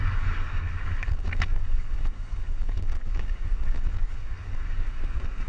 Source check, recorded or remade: remade